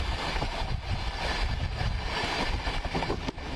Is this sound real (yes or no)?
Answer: yes